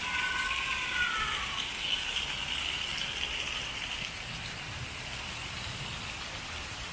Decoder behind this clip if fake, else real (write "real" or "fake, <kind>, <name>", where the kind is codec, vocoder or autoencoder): real